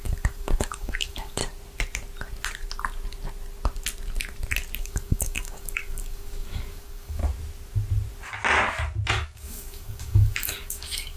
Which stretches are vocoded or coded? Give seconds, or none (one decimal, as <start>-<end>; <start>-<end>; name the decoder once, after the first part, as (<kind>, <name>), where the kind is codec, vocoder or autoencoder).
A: 0.0-1.4 (codec, DAC); 4.8-7.2; 9.1-11.2